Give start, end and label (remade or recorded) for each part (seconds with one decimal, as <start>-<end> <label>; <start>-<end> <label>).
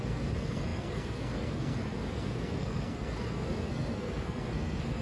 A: 0.0-5.0 remade